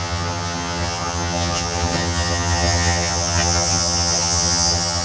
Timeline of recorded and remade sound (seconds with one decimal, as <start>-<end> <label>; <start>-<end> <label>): 0.0-5.0 remade